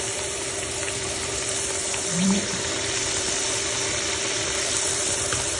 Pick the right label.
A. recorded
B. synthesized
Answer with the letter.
B